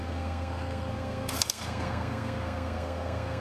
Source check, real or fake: fake